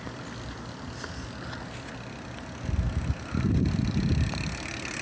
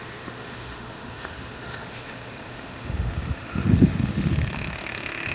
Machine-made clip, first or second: second